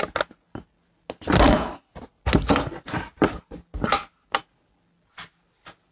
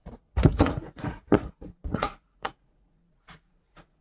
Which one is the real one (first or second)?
first